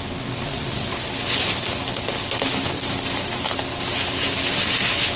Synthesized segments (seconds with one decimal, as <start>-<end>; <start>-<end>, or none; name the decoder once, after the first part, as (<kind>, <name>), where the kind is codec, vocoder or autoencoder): none